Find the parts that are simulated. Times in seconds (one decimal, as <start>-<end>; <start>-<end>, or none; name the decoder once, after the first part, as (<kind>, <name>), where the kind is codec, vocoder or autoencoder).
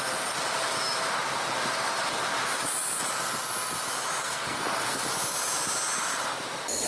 4.2-5.0 (codec, SNAC)